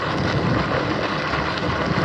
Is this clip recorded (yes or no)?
yes